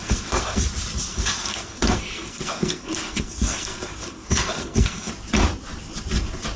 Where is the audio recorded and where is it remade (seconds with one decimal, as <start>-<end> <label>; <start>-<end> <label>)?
0.0-0.6 remade; 0.6-1.1 recorded; 1.1-5.1 remade; 5.1-6.6 recorded